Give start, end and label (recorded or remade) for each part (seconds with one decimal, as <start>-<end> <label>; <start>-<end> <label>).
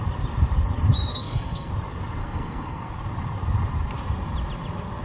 0.0-1.1 recorded; 1.1-1.7 remade; 1.7-2.2 recorded; 2.2-2.9 remade; 2.9-5.0 recorded